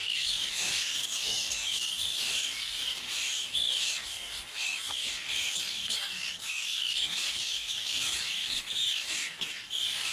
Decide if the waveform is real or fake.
fake